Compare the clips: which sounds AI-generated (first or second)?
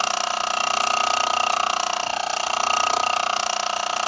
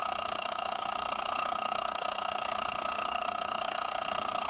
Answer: second